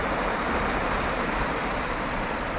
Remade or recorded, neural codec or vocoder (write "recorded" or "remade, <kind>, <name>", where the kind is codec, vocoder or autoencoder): remade, vocoder, BigVGAN v2